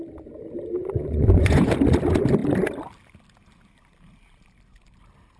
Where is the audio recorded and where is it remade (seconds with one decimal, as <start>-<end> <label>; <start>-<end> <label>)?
0.0-0.8 recorded; 0.8-1.7 remade; 1.7-5.4 recorded